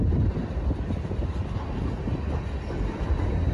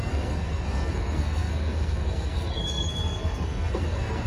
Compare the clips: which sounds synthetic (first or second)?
second